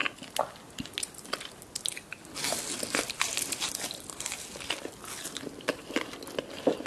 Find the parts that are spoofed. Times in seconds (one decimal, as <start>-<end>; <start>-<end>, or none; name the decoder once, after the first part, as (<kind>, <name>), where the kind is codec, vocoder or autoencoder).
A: none